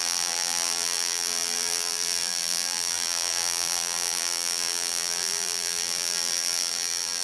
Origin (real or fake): fake